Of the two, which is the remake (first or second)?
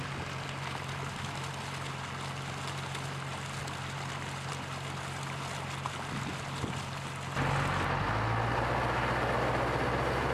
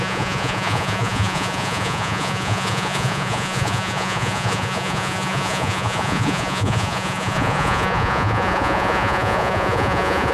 second